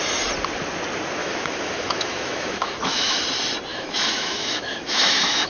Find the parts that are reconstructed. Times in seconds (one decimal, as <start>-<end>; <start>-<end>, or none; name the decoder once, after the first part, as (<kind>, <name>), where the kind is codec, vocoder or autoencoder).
1.2-3.2 (autoencoder, DAC-VAE); 3.7-5.5